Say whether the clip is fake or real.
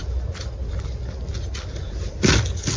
real